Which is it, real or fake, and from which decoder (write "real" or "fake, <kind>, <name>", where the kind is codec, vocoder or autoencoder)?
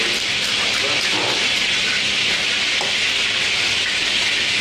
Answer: real